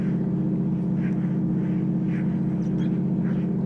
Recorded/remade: recorded